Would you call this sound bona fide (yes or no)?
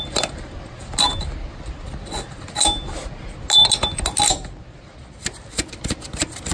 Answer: yes